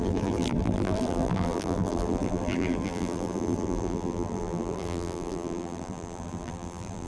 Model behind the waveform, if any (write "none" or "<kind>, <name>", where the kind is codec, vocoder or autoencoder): vocoder, BigVGAN v2